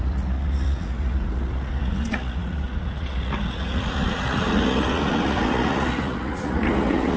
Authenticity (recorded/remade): remade